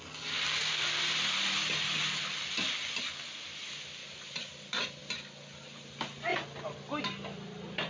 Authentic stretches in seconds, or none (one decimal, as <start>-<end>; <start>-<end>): 0.0-7.9